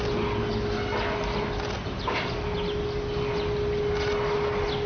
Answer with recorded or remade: recorded